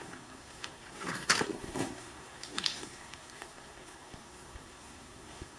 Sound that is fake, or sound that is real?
fake